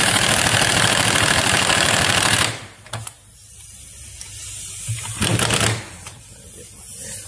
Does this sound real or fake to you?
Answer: real